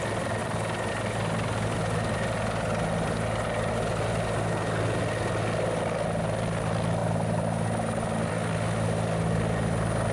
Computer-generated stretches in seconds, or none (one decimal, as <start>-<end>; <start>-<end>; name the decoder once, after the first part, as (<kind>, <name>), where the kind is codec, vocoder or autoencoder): none